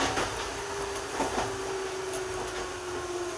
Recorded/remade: recorded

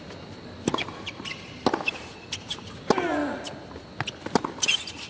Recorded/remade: recorded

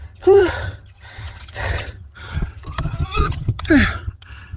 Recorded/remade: remade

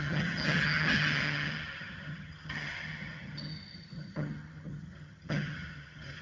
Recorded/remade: remade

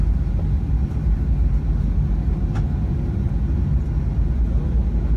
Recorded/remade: recorded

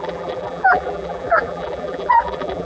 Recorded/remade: remade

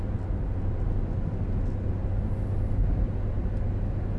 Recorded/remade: recorded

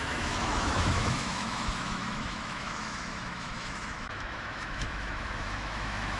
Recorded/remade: remade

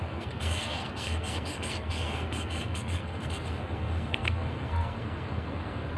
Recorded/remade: remade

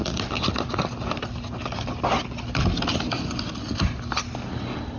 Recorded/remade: recorded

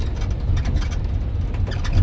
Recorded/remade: recorded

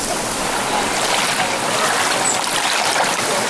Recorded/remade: recorded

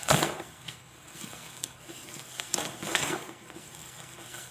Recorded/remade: remade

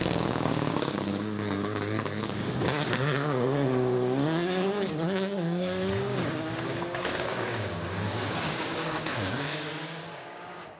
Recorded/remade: remade